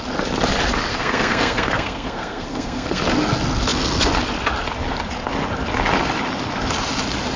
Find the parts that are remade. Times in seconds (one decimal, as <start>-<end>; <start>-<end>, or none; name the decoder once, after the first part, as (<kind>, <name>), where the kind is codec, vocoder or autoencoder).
0.9-3.0 (codec, SNAC)